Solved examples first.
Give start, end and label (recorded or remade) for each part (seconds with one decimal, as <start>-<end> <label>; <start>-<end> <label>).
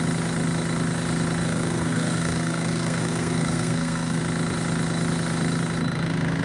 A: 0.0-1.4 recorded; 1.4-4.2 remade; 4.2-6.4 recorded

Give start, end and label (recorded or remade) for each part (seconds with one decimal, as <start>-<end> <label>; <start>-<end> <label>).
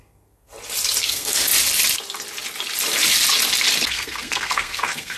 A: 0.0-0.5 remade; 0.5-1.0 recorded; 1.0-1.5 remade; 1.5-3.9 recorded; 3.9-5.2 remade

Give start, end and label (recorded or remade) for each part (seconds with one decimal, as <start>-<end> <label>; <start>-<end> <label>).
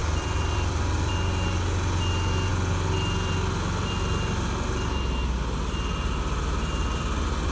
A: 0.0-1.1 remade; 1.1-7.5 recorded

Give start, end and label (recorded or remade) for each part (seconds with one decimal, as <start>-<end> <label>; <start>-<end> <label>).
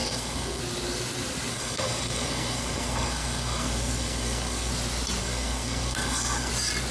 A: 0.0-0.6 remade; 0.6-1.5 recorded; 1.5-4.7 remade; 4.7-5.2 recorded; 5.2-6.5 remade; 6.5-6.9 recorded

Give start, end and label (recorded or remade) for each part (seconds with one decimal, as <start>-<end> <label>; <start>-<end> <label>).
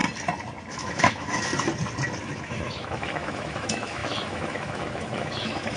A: 0.0-0.7 recorded; 0.7-1.5 remade; 1.5-2.2 recorded; 2.2-5.8 remade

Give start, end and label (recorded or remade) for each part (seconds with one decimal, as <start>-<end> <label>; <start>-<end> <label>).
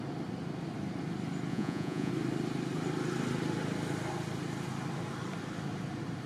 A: 0.0-1.5 recorded; 1.5-2.1 remade; 2.1-6.3 recorded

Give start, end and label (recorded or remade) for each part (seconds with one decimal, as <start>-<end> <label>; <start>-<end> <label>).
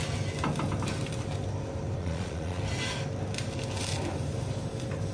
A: 0.0-2.0 recorded; 2.0-2.6 remade; 2.6-5.1 recorded